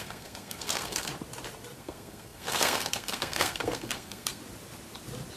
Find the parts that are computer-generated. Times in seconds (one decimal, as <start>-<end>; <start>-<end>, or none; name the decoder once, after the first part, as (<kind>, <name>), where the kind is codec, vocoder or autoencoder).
0.0-1.1 (codec, SNAC); 1.8-4.4